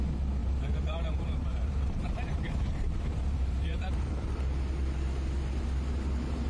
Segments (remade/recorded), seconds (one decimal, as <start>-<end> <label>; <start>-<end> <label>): 0.0-0.4 recorded; 0.4-4.1 remade; 4.1-6.5 recorded